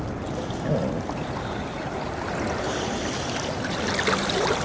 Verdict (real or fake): real